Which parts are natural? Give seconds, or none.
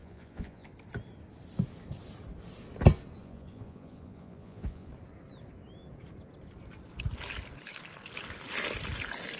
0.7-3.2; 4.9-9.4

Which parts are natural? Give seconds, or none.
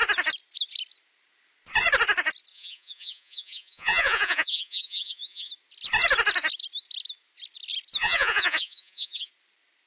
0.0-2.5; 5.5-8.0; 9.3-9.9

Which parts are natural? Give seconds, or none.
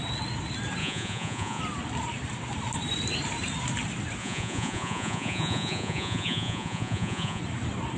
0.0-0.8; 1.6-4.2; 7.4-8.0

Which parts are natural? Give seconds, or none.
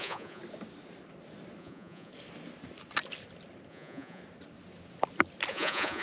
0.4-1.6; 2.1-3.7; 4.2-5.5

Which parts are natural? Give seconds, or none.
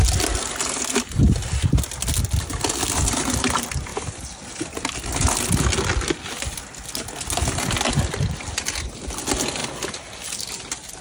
0.0-11.0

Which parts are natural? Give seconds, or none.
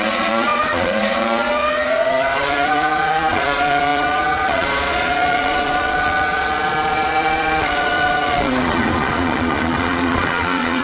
none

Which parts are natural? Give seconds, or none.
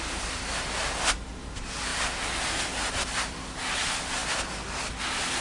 0.0-5.4